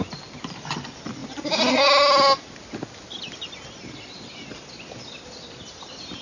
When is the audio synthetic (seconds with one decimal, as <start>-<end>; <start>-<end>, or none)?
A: none